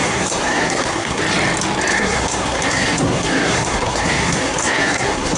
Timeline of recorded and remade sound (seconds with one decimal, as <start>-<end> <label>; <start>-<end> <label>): 0.0-1.2 remade; 1.2-1.9 recorded; 1.9-5.4 remade